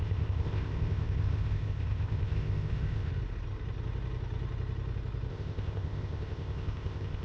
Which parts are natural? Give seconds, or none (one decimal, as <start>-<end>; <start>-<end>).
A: 3.1-5.3